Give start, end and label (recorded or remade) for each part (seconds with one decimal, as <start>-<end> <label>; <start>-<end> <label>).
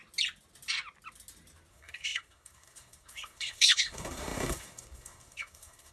0.0-1.7 recorded; 1.7-5.9 remade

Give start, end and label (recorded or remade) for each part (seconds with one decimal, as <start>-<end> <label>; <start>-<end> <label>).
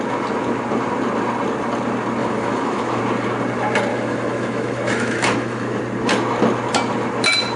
0.0-2.2 recorded; 2.2-3.0 remade; 3.0-3.9 recorded; 3.9-5.8 remade; 5.8-7.6 recorded